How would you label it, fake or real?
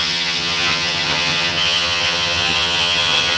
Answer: fake